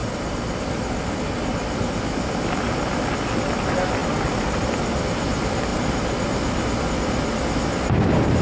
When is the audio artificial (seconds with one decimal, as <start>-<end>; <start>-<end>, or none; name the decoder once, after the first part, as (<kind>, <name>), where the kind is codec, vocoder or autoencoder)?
0.0-1.5 (vocoder, BigVGAN v2); 4.0-4.7